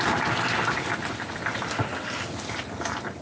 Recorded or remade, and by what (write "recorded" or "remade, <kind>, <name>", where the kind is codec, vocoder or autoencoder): recorded